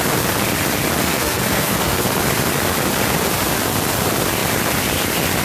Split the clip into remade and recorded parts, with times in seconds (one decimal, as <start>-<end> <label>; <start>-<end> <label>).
0.0-1.0 recorded; 1.0-2.2 remade; 2.2-5.4 recorded